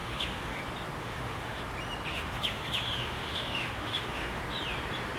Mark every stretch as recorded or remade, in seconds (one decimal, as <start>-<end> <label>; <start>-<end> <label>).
0.0-0.6 remade; 0.6-1.0 recorded; 1.0-1.6 remade; 1.6-2.1 recorded; 2.1-4.4 remade; 4.4-5.2 recorded